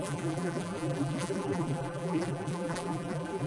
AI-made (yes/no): yes